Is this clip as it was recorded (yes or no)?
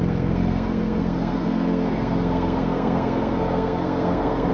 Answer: no